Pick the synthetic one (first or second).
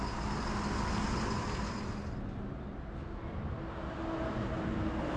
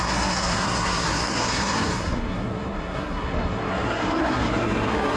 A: second